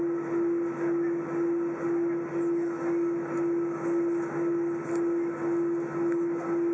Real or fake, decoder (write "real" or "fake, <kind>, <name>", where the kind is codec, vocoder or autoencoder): real